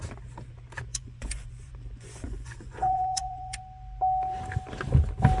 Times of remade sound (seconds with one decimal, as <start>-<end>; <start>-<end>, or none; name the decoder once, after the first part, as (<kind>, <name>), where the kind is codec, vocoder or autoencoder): 0.9-3.6 (vocoder, Vocos)